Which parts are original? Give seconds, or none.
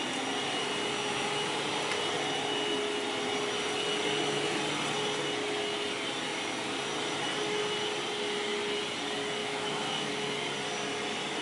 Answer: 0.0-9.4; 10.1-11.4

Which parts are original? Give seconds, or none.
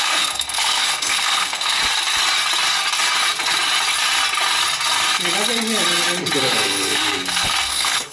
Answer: 1.8-6.4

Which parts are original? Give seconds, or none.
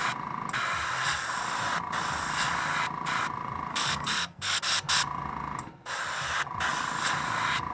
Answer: 0.0-3.7; 4.6-7.7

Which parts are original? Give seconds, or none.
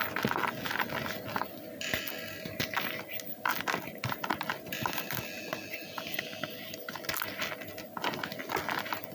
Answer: 0.0-9.1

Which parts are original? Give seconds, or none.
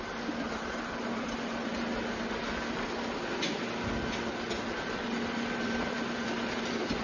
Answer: 1.7-5.8